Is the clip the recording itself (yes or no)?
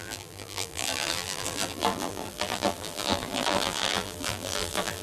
no